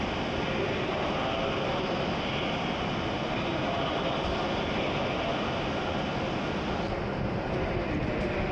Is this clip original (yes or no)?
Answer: yes